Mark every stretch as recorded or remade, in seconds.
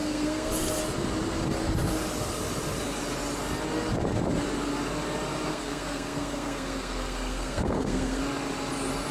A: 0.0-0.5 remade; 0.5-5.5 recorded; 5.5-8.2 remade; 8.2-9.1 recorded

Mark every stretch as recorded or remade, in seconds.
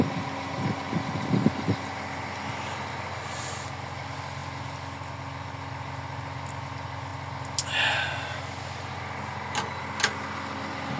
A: 0.0-11.0 recorded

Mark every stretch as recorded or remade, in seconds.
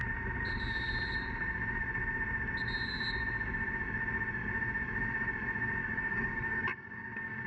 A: 0.0-5.8 recorded; 5.8-7.5 remade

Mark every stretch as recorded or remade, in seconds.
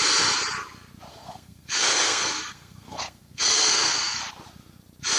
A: 0.0-1.1 recorded; 1.1-4.2 remade; 4.2-5.2 recorded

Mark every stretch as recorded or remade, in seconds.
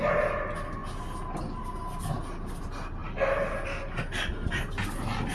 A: 0.0-5.3 recorded